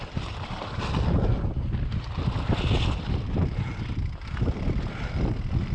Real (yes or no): yes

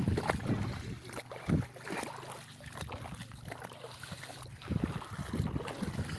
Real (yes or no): yes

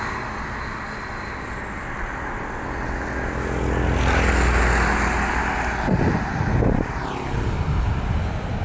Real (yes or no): yes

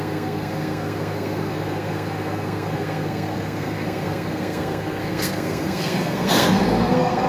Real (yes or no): no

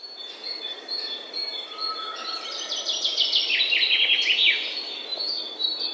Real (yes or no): yes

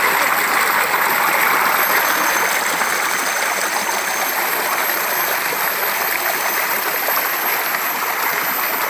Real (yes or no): yes